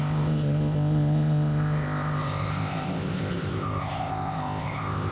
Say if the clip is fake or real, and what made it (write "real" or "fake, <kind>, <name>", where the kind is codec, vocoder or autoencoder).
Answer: fake, codec, ZipCodec